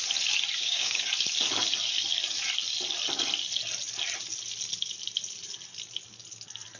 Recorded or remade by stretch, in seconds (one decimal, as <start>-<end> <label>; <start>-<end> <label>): 0.0-0.6 recorded; 0.6-1.1 remade; 1.1-6.8 recorded